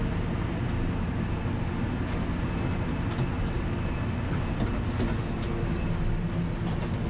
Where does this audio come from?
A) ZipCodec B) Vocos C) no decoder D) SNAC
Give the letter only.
C